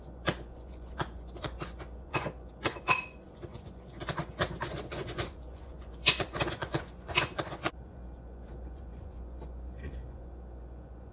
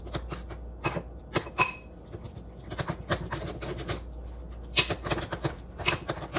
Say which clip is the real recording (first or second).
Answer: second